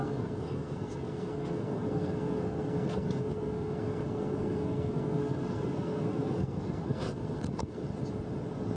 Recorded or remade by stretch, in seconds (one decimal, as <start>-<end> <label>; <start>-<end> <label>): 0.0-7.8 remade; 7.8-8.8 recorded